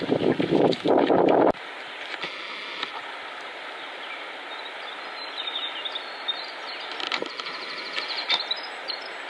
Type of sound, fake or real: real